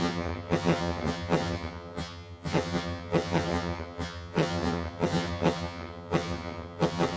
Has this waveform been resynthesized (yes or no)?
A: yes